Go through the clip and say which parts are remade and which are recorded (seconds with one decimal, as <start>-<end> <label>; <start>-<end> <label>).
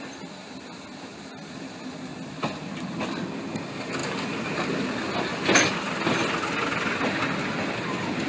0.0-8.3 recorded